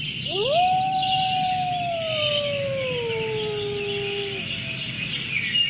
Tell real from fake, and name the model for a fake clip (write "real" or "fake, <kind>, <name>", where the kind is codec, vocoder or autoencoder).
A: real